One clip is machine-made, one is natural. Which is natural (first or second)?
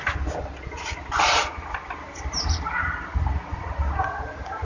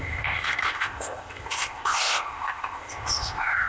first